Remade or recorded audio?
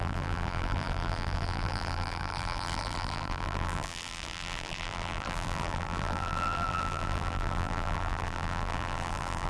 remade